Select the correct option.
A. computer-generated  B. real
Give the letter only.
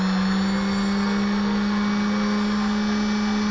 B